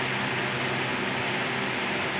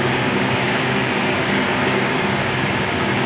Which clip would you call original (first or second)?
first